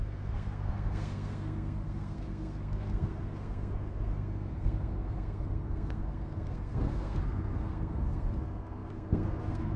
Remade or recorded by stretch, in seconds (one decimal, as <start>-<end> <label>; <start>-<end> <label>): 0.0-9.8 remade